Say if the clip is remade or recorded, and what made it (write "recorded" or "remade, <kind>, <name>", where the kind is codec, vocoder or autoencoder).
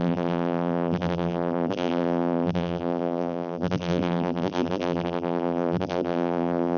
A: remade, vocoder, BigVGAN v2